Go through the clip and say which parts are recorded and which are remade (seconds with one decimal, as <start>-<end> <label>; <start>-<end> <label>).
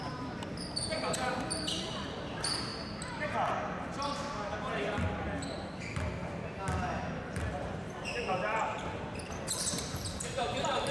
0.0-2.7 remade; 2.7-7.3 recorded; 7.3-10.9 remade